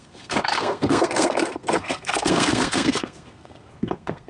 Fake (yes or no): yes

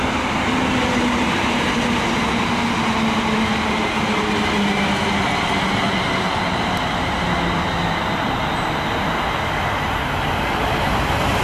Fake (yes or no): no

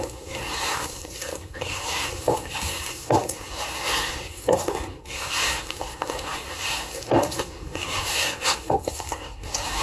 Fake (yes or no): yes